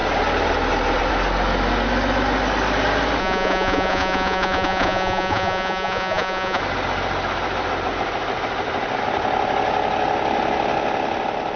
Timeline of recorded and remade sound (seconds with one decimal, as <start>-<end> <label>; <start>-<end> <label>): 0.0-3.2 recorded; 3.2-6.6 remade; 6.6-11.6 recorded